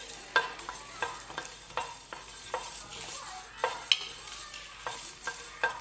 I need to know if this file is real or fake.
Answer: real